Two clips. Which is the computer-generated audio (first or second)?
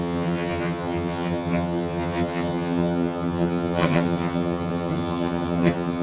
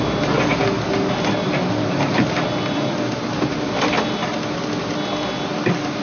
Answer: first